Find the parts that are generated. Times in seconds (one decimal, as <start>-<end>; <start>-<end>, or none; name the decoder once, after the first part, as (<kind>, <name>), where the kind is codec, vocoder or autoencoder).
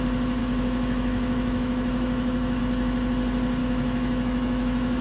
0.4-2.6 (autoencoder, DAC-VAE); 3.6-5.0